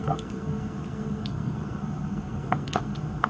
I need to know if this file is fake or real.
fake